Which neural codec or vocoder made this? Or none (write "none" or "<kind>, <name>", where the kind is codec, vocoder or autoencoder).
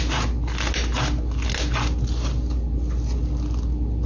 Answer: none